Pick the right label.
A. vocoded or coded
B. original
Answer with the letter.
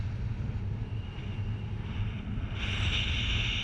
B